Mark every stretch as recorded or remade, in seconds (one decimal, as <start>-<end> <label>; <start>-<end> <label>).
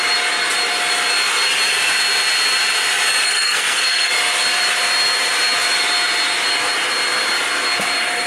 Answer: 0.0-3.2 recorded; 3.2-4.1 remade; 4.1-8.3 recorded